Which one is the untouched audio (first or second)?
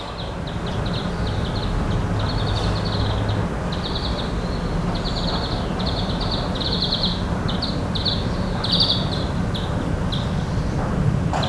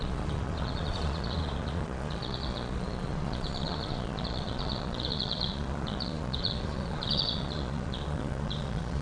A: first